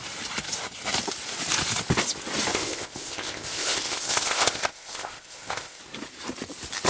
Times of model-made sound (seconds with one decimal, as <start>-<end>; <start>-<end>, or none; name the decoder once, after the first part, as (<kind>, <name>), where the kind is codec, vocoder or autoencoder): 2.5-5.8 (codec, ZipCodec)